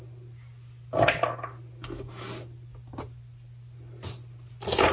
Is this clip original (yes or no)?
yes